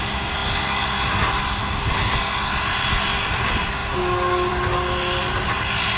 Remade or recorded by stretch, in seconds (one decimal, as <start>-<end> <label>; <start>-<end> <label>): 0.0-6.0 recorded